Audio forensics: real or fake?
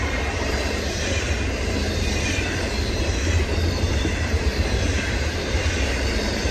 fake